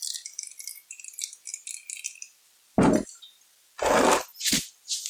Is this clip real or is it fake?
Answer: real